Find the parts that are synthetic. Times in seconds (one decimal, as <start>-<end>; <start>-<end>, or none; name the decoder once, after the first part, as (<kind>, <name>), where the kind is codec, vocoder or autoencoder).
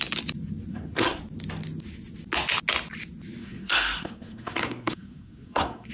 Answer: 0.7-1.2 (codec, SNAC); 3.4-5.9